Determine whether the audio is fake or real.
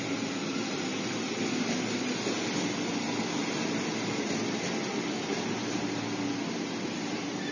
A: real